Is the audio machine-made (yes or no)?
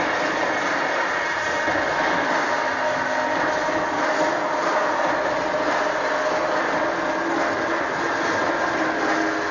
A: no